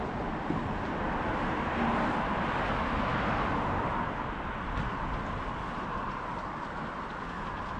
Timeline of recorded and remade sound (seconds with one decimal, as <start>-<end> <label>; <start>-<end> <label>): 0.0-7.8 recorded